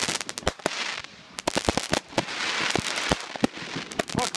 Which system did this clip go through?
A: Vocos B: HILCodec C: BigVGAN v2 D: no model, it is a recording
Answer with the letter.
D